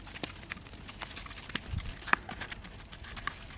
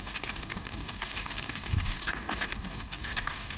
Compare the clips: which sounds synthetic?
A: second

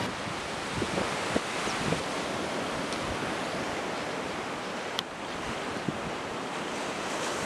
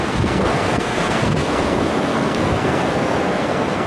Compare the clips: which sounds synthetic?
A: second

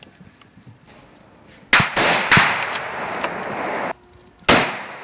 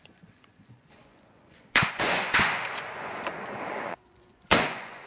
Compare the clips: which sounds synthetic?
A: second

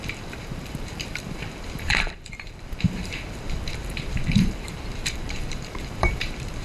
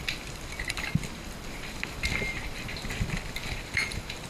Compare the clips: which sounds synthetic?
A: first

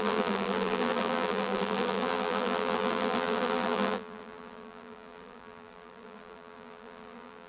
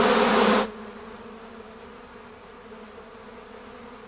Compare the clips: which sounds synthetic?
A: first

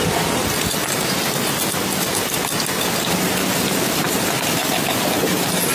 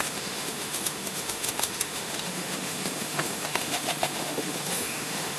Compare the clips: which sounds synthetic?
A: second